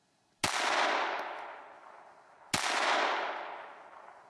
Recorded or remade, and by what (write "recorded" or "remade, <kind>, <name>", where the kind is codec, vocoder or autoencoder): recorded